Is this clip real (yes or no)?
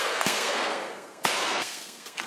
no